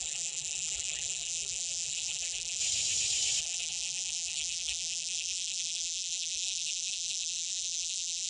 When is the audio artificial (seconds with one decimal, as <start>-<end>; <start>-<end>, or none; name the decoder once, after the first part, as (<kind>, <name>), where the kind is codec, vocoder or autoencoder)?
0.0-2.6 (vocoder, BigVGAN v2); 3.4-8.3